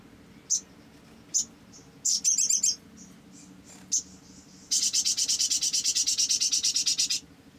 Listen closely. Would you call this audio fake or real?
real